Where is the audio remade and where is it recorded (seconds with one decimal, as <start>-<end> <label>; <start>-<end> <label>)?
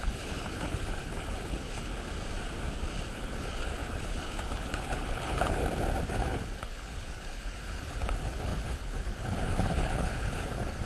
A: 0.0-1.9 remade; 1.9-3.1 recorded; 3.1-5.6 remade; 5.6-6.1 recorded; 6.1-10.9 remade